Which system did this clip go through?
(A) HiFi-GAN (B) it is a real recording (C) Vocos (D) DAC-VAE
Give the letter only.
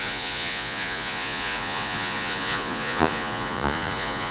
C